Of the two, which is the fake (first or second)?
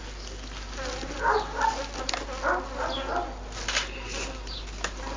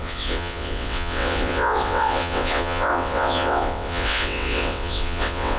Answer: second